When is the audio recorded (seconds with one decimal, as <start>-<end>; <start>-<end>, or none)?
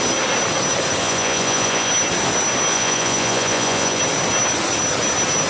0.0-1.0; 1.9-2.7; 4.0-5.5